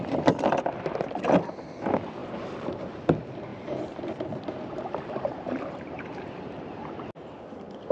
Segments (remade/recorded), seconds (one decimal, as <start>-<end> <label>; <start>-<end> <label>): 0.0-2.2 recorded; 2.2-3.0 remade; 3.0-3.5 recorded; 3.5-6.9 remade; 6.9-7.9 recorded

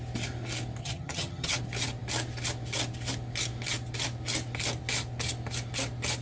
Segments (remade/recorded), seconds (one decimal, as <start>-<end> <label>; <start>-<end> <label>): 0.0-0.8 recorded; 0.8-1.6 remade; 1.6-6.2 recorded

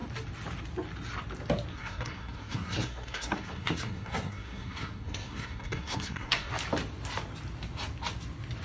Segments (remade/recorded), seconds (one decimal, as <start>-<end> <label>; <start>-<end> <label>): 0.0-1.7 recorded; 1.7-6.5 remade; 6.5-8.6 recorded

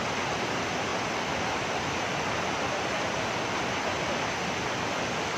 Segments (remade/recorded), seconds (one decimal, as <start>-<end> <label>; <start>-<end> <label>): 0.0-0.9 recorded; 0.9-1.9 remade; 1.9-5.4 recorded